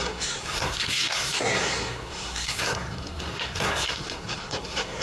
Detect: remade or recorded remade